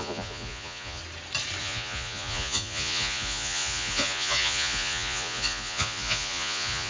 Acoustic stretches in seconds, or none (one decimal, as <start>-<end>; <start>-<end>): 1.0-1.6